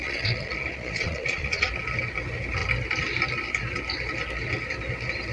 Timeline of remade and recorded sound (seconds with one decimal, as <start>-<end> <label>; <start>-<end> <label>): 0.0-1.7 remade; 1.7-5.3 recorded